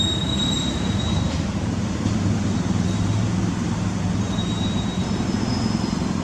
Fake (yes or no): yes